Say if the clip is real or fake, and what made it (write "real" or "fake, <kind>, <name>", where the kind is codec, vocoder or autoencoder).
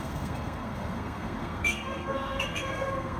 fake, codec, SNAC